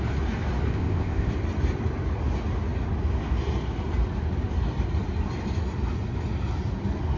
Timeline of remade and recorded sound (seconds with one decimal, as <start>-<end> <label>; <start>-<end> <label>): 0.0-0.7 recorded; 0.7-1.3 remade; 1.3-7.2 recorded